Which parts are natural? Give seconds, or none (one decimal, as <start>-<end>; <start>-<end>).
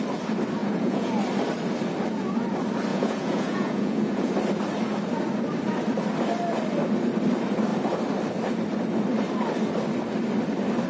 0.0-0.6; 1.1-2.9; 4.3-10.9